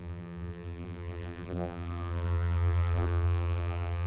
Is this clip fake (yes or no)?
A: yes